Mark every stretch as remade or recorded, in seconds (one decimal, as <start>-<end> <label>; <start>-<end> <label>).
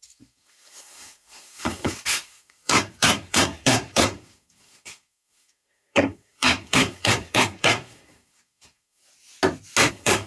0.0-9.0 remade; 9.0-9.9 recorded; 9.9-10.3 remade